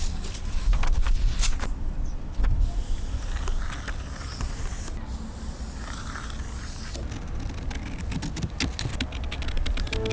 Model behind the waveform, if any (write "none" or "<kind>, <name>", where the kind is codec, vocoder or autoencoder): none